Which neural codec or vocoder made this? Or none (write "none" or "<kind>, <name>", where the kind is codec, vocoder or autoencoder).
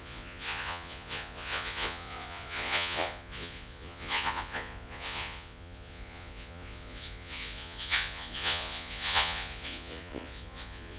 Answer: vocoder, Vocos